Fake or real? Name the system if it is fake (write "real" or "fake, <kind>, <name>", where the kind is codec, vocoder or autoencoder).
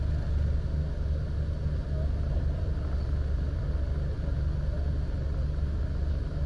real